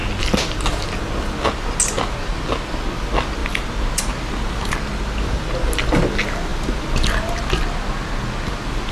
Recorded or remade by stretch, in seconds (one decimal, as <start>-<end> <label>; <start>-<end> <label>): 0.0-8.9 recorded

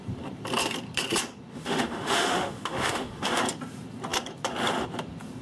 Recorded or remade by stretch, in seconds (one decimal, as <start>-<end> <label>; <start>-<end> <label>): 0.0-1.5 recorded; 1.5-3.4 remade; 3.4-5.4 recorded

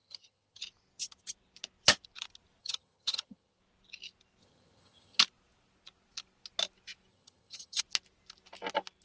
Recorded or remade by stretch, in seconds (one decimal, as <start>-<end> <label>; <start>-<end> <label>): 0.0-0.6 remade; 0.6-2.6 recorded; 2.6-3.6 remade; 3.6-4.4 recorded; 4.4-5.2 remade; 5.2-7.1 recorded; 7.1-7.8 remade; 7.8-9.0 recorded